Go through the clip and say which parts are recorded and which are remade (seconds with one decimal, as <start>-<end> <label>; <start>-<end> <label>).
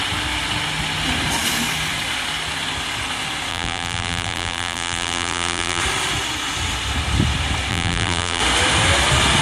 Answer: 0.0-3.5 recorded; 3.5-5.8 remade; 5.8-7.7 recorded; 7.7-8.4 remade; 8.4-9.4 recorded